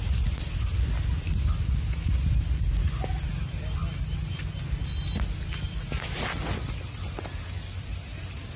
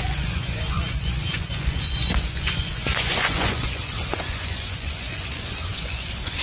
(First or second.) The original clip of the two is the first